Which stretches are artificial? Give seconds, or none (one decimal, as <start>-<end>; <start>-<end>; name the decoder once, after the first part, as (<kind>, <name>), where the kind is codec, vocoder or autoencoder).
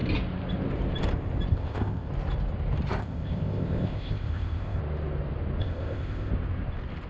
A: 1.5-2.1 (codec, ZipCodec); 3.0-4.8; 5.6-6.3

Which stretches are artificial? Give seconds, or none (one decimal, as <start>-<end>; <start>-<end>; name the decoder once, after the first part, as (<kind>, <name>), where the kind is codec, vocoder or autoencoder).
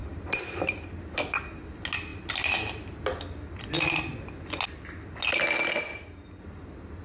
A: 0.0-1.2 (vocoder, BigVGAN v2)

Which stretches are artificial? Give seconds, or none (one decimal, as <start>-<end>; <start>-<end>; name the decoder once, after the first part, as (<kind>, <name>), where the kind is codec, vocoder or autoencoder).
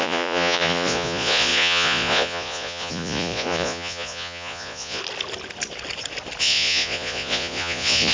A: 0.0-5.0 (vocoder, Vocos); 6.4-8.1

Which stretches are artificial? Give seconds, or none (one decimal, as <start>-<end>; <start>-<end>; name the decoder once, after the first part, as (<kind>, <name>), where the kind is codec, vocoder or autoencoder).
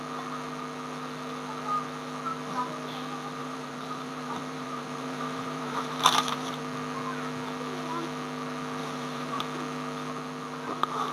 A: 3.4-6.6 (vocoder, BigVGAN v2); 8.8-9.4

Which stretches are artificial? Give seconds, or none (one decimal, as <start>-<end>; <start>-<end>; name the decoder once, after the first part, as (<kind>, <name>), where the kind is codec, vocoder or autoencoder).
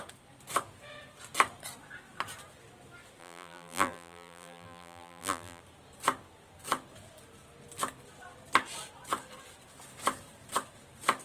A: 3.2-5.6 (vocoder, BigVGAN v2)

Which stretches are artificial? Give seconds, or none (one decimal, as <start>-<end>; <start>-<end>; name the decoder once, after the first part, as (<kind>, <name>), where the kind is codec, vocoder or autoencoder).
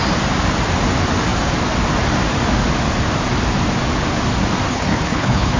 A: 4.7-5.6 (codec, HILCodec)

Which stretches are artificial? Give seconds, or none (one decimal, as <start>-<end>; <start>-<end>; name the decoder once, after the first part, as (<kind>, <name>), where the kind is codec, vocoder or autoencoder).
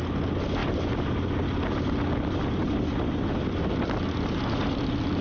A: none